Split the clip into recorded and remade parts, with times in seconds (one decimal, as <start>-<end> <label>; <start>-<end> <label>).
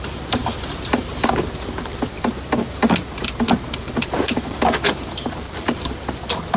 0.0-0.4 recorded; 0.4-1.3 remade; 1.3-6.6 recorded